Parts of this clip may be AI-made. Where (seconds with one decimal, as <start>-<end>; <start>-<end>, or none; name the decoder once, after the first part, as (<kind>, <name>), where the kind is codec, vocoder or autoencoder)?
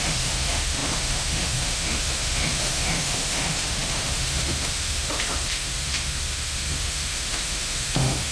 0.0-8.3 (autoencoder, DAC-VAE)